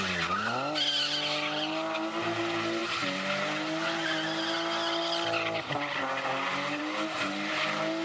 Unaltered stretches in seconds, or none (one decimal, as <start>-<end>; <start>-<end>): 0.0-8.0